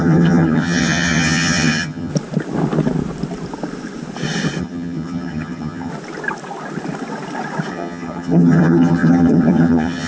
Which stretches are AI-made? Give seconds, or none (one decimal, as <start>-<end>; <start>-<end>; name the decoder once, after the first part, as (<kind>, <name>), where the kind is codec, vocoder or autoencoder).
0.0-2.1 (vocoder, HiFi-GAN); 4.6-5.9; 7.7-10.1